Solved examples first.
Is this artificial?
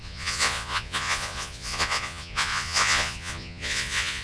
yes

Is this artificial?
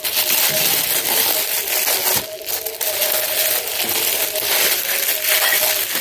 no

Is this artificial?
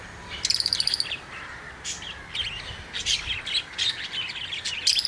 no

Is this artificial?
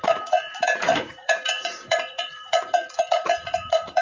yes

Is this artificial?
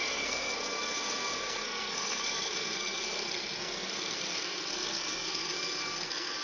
yes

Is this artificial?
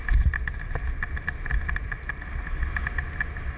no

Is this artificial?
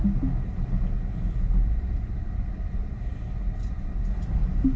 no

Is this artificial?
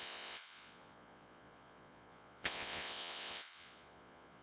yes